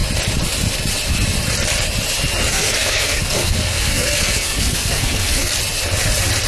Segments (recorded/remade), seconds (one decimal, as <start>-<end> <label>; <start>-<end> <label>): 0.0-2.5 recorded; 2.5-5.5 remade; 5.5-6.5 recorded

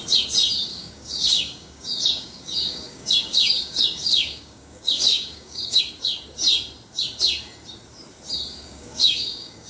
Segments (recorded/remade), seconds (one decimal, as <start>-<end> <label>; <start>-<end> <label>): 0.0-0.7 recorded; 0.7-5.8 remade; 5.8-8.6 recorded; 8.6-9.7 remade

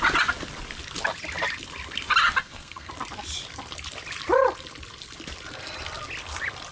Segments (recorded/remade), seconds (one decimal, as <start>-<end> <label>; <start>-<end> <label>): 0.0-2.4 recorded; 2.4-2.9 remade; 2.9-6.7 recorded

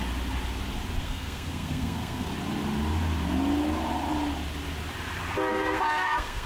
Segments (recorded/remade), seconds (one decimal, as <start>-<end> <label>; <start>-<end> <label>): 0.0-1.0 recorded; 1.0-2.3 remade; 2.3-5.5 recorded; 5.5-6.5 remade

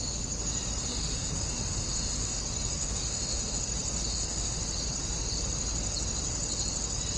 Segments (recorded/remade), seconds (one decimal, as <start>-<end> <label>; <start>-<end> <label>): 0.0-0.9 recorded; 0.9-2.4 remade; 2.4-2.8 recorded; 2.8-3.6 remade; 3.6-4.1 recorded; 4.1-4.6 remade; 4.6-7.2 recorded

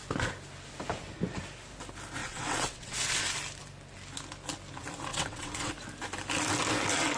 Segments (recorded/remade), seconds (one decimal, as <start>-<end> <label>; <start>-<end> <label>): 0.0-2.2 recorded; 2.2-3.2 remade; 3.2-5.1 recorded; 5.1-5.7 remade; 5.7-7.2 recorded